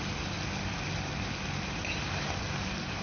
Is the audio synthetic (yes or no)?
no